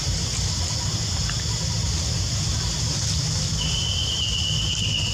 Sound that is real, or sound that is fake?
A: real